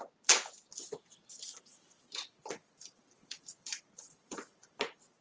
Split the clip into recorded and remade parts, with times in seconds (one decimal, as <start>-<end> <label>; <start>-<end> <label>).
0.0-1.7 recorded; 1.7-4.8 remade; 4.8-5.2 recorded